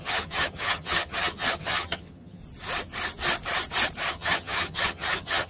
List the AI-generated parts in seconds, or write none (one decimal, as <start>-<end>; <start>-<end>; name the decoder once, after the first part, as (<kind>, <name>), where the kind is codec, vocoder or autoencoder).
0.0-2.4 (vocoder, HiFi-GAN); 4.1-5.5